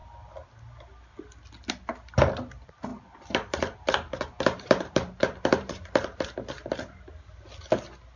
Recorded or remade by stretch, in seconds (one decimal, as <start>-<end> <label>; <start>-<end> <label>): 0.0-2.9 recorded; 2.9-6.7 remade; 6.7-8.2 recorded